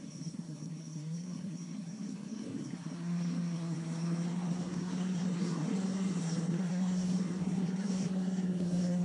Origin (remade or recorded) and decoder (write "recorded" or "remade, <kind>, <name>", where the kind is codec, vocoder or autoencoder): remade, codec, SNAC